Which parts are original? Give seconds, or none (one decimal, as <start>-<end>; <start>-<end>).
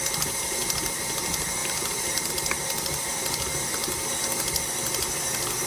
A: 0.0-1.6; 2.3-5.7